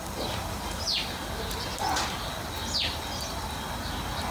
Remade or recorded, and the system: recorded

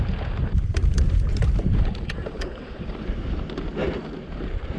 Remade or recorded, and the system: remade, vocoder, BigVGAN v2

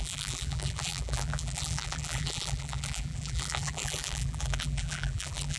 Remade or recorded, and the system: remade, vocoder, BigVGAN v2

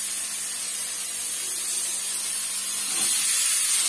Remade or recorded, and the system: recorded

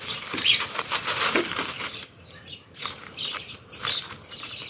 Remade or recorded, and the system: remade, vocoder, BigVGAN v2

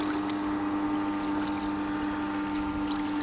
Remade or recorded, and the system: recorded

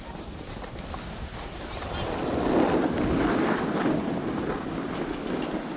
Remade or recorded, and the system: recorded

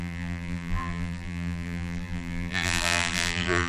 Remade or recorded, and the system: remade, vocoder, BigVGAN v2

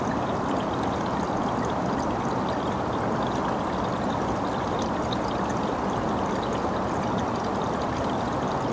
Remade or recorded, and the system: recorded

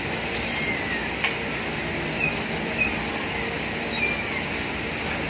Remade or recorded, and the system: recorded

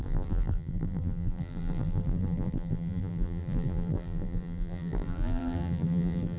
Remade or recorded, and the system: remade, vocoder, BigVGAN v2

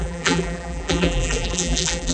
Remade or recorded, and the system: remade, vocoder, BigVGAN v2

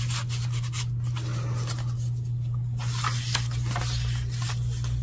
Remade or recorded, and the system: recorded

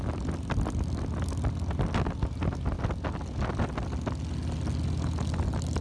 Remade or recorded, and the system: recorded